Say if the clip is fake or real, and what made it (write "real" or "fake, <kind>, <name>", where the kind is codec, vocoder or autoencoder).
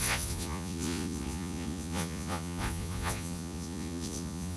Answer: fake, vocoder, Vocos